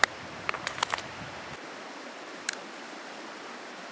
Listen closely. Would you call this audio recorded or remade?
remade